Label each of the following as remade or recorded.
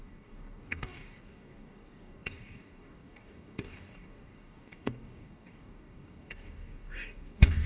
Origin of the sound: remade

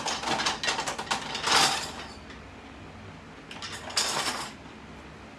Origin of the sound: recorded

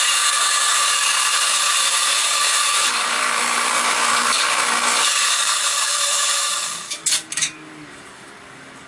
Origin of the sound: remade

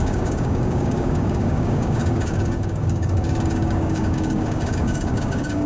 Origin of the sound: remade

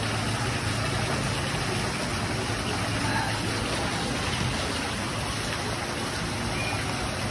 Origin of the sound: recorded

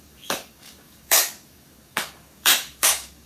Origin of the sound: remade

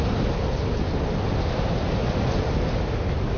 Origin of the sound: recorded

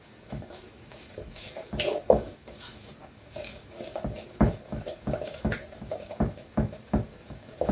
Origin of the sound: remade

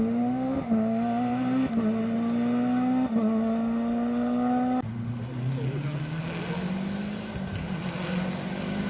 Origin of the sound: recorded